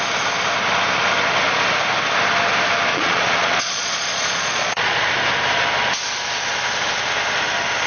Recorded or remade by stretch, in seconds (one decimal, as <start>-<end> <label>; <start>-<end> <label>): 0.0-2.9 recorded; 2.9-5.1 remade; 5.1-7.9 recorded